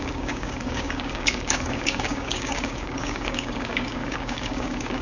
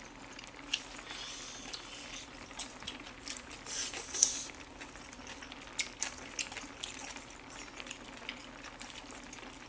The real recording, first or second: second